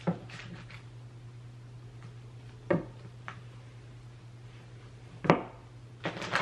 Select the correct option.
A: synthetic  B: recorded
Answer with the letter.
B